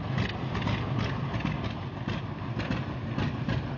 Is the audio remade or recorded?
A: recorded